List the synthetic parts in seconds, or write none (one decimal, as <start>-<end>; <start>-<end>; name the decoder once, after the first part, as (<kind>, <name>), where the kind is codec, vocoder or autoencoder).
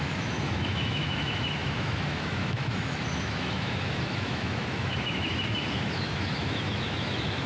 0.0-7.5 (autoencoder, DAC-VAE)